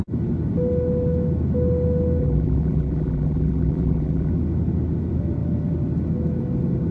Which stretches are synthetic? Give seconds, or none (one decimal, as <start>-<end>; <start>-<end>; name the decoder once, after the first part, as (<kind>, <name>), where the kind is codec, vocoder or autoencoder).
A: 2.2-4.3 (vocoder, BigVGAN v2)